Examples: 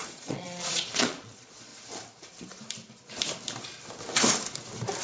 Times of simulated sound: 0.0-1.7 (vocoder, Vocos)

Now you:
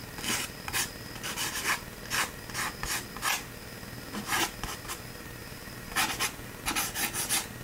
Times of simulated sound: 5.4-6.6 (vocoder, BigVGAN v2)

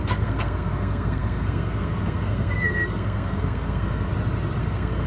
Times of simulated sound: 0.0-4.1 (codec, SNAC); 4.6-5.1

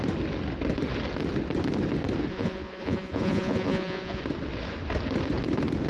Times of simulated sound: 2.3-4.2 (vocoder, Vocos)

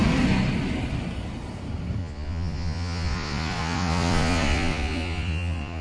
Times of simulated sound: 2.0-5.8 (vocoder, Vocos)

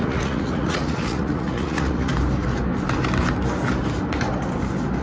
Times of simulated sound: 0.0-2.1 (vocoder, Vocos)

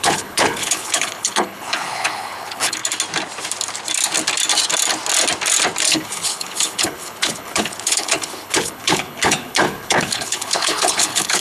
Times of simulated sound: 0.0-2.8 (codec, HILCodec); 5.9-11.4

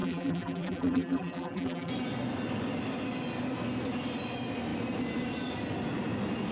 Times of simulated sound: 0.0-1.9 (vocoder, BigVGAN v2)